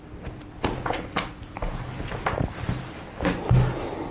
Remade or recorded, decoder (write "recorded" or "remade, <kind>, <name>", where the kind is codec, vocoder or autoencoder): recorded